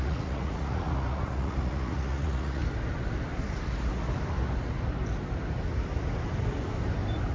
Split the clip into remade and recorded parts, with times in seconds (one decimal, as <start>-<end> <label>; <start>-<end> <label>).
0.0-2.6 remade; 2.6-7.3 recorded